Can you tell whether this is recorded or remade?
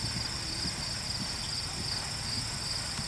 recorded